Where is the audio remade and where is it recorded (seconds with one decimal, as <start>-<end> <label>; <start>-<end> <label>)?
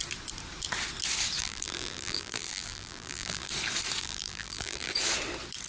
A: 0.0-1.4 recorded; 1.4-3.5 remade; 3.5-4.0 recorded; 4.0-4.9 remade; 4.9-5.7 recorded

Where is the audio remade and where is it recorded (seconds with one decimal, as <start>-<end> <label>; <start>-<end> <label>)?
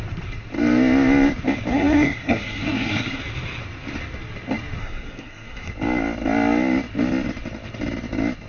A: 0.0-1.7 recorded; 1.7-3.2 remade; 3.2-4.8 recorded; 4.8-5.7 remade; 5.7-8.5 recorded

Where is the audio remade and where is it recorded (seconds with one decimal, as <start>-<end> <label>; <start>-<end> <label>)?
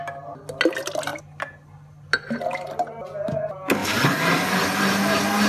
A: 0.0-3.8 recorded; 3.8-5.0 remade; 5.0-5.5 recorded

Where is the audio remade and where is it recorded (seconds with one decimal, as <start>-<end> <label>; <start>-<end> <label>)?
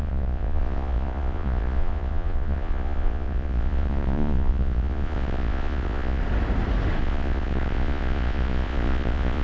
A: 0.0-6.2 remade; 6.2-7.0 recorded; 7.0-9.4 remade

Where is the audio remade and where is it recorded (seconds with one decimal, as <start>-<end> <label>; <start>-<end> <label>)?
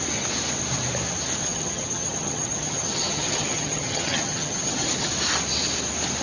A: 0.0-1.4 recorded; 1.4-5.1 remade; 5.1-6.2 recorded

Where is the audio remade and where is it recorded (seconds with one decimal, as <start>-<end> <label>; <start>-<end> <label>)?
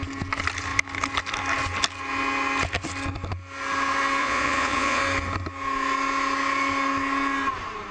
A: 0.0-4.2 recorded; 4.2-5.0 remade; 5.0-7.9 recorded